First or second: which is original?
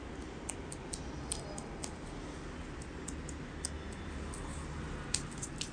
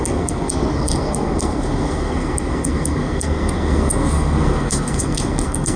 first